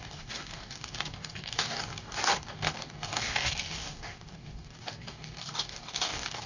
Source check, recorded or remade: remade